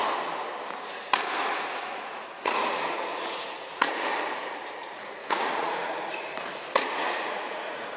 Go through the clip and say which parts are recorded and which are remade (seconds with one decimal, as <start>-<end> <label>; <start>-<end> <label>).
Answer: 0.0-1.4 recorded; 1.4-8.0 remade